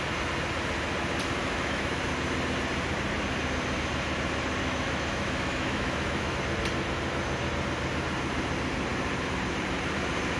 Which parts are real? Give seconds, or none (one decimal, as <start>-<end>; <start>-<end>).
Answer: 0.0-1.4; 2.0-4.6; 6.4-10.4

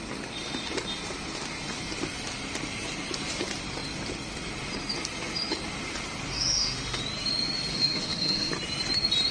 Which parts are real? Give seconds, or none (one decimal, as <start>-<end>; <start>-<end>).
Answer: 0.0-6.3; 7.0-7.7; 8.5-9.3

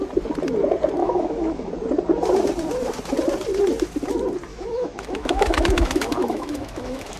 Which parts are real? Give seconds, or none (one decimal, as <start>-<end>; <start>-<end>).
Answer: 0.0-1.0; 1.7-4.5

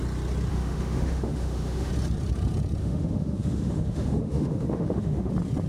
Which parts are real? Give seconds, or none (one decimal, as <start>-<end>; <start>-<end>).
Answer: 0.0-0.5; 1.9-2.8; 5.3-5.7

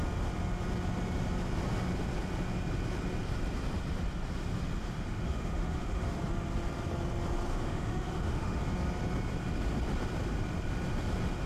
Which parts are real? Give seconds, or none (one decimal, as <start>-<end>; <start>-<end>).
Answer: 0.0-4.8; 6.2-7.5; 8.6-11.5